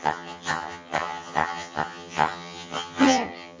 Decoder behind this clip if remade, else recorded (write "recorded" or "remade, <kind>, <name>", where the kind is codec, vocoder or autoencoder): remade, vocoder, HiFi-GAN